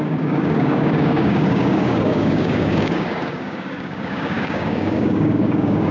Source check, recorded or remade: remade